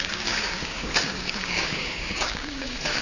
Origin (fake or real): fake